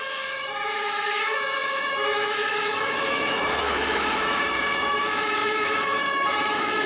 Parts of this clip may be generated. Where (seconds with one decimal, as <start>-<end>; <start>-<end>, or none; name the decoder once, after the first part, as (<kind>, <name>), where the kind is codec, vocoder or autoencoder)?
0.0-6.9 (autoencoder, DAC-VAE)

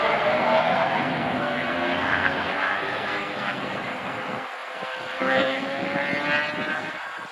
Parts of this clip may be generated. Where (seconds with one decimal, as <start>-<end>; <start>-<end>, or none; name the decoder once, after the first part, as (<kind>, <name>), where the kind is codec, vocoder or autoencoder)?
0.0-6.0 (codec, SNAC); 6.7-7.3

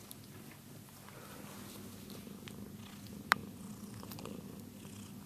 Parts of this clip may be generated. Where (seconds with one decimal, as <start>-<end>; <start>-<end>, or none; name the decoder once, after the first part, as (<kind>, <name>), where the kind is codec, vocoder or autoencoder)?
none

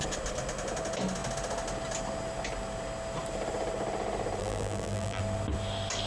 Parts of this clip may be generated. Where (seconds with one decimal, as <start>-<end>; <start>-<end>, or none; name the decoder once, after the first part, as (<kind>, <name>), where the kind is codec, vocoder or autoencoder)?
4.4-5.2 (vocoder, BigVGAN v2)

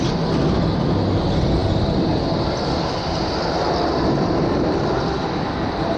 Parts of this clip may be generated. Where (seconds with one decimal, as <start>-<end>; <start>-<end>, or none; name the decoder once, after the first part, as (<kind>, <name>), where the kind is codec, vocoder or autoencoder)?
none

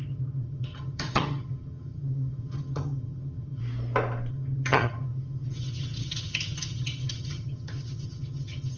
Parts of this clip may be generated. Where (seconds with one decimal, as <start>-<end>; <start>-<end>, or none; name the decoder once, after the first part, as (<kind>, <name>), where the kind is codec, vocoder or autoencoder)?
0.0-3.6 (vocoder, HiFi-GAN); 4.3-8.8

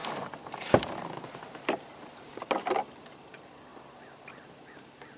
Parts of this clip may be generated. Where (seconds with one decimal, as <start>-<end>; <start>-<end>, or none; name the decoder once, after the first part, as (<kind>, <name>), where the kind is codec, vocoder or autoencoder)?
0.0-5.2 (vocoder, BigVGAN v2)